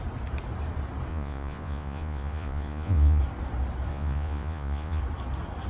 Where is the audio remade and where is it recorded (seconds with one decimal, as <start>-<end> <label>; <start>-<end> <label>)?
0.0-1.1 recorded; 1.1-3.2 remade; 3.2-3.9 recorded; 3.9-5.0 remade; 5.0-5.7 recorded